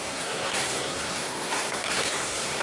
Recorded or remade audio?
remade